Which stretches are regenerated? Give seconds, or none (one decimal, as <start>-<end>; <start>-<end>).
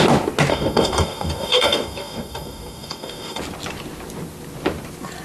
0.5-3.4